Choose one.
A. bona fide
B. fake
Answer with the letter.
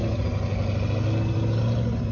A